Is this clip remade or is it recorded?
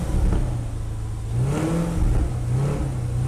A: recorded